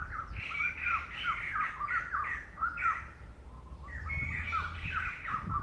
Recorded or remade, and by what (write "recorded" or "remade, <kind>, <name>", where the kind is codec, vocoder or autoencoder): recorded